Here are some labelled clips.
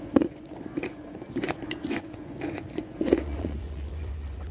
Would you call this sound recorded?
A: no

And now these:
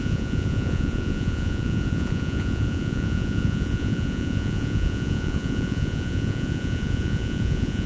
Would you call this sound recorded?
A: no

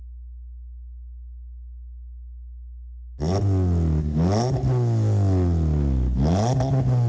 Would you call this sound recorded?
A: yes